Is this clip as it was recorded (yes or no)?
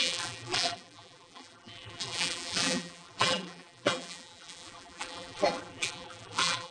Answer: no